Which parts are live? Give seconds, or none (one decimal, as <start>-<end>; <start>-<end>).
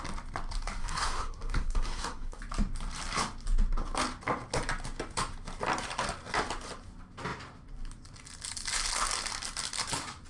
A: 0.0-0.8; 2.4-10.3